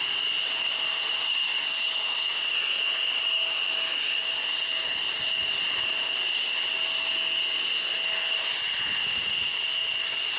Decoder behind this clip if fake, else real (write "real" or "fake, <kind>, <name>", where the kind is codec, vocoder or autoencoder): real